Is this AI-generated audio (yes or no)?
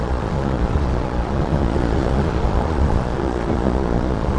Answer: yes